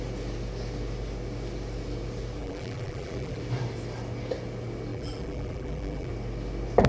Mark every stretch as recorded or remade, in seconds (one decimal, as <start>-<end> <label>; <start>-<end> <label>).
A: 0.0-2.4 recorded; 2.4-3.4 remade; 3.4-4.9 recorded; 4.9-6.1 remade; 6.1-6.9 recorded